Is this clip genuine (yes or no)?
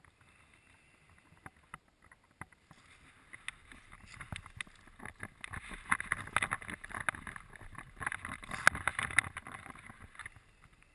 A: yes